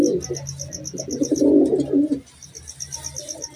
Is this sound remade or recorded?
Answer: recorded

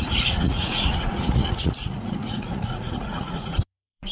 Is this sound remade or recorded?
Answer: remade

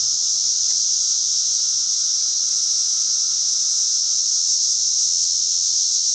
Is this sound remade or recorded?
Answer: remade